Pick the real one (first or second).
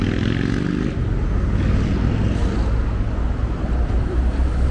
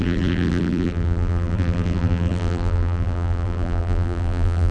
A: first